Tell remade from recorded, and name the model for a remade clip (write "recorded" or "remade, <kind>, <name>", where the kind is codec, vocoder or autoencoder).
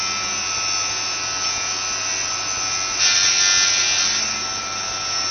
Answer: recorded